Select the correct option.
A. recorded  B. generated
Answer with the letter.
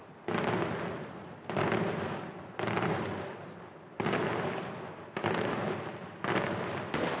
A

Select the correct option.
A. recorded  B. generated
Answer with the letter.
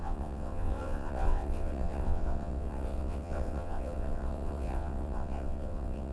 B